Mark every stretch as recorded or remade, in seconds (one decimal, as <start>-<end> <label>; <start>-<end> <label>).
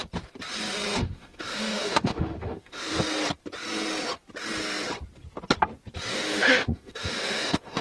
0.0-1.0 recorded; 1.0-3.0 remade; 3.0-6.1 recorded; 6.1-7.8 remade